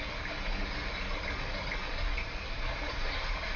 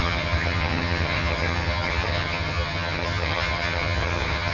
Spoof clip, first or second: second